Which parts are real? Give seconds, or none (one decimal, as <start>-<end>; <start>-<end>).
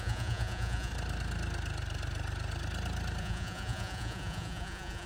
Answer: 0.9-3.2